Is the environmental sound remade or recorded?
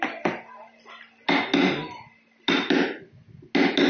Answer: recorded